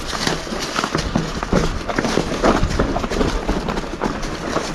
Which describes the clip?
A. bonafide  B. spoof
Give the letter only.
A